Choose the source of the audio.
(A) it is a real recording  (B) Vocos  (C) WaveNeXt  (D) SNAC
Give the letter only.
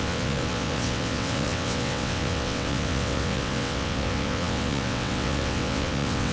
C